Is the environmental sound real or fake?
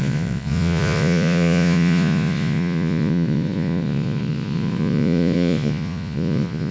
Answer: fake